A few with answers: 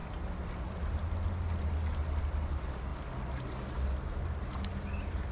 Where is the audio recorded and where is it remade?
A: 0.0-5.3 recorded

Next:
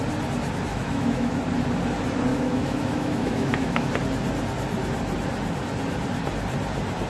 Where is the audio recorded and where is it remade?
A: 0.0-0.7 recorded; 0.7-1.4 remade; 1.4-2.3 recorded; 2.3-3.9 remade; 3.9-7.1 recorded

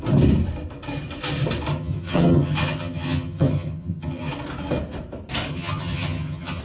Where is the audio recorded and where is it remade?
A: 0.0-1.7 recorded; 1.7-4.3 remade; 4.3-5.5 recorded; 5.5-6.6 remade

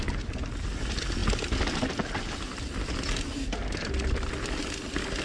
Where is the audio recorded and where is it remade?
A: 0.0-5.2 recorded